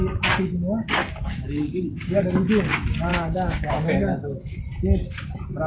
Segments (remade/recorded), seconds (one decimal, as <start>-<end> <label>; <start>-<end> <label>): 0.0-1.0 recorded; 1.0-2.2 remade; 2.2-3.1 recorded; 3.1-4.6 remade; 4.6-5.7 recorded